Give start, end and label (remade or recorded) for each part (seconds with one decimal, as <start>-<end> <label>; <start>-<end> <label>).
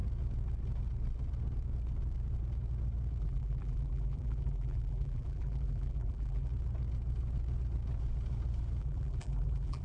0.0-3.2 recorded; 3.2-6.5 remade; 6.5-8.8 recorded; 8.8-9.8 remade